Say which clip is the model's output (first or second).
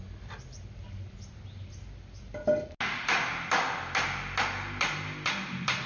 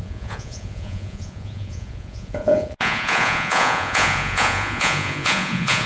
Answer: second